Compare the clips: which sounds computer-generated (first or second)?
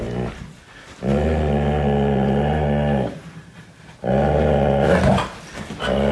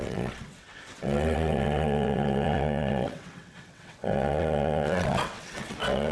second